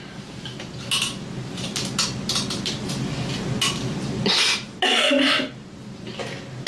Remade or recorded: recorded